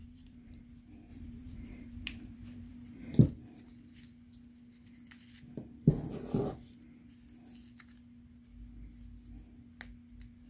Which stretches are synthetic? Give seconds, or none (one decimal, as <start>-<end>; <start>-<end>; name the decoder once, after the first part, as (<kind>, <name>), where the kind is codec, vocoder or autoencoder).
0.0-0.6 (vocoder, BigVGAN v2); 1.1-3.2